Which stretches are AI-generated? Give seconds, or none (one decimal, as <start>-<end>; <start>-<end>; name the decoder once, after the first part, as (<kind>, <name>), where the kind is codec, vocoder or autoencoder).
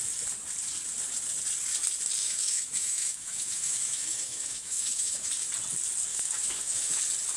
2.2-5.3 (autoencoder, DAC-VAE); 6.1-7.0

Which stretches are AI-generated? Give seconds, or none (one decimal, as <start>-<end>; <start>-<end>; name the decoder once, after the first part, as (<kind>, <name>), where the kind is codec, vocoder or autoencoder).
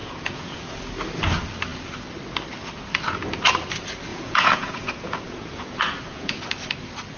0.0-0.8 (vocoder, Vocos); 4.1-6.4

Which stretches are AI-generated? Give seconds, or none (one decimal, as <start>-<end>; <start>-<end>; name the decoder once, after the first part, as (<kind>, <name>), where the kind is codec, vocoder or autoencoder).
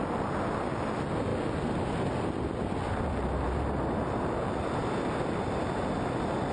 none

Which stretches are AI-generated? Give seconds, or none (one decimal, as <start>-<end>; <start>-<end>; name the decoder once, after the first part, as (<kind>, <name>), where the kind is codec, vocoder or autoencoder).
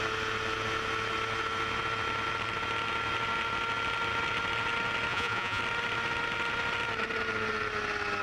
5.1-5.6 (vocoder, Vocos)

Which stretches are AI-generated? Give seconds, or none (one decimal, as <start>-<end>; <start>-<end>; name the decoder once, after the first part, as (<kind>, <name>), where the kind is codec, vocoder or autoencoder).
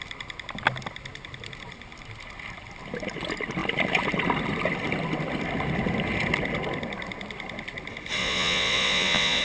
8.2-9.4 (vocoder, Vocos)